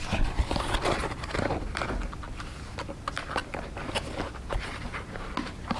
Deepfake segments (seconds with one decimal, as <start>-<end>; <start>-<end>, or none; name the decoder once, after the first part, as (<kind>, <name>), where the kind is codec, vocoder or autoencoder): 1.0-2.2 (vocoder, BigVGAN v2)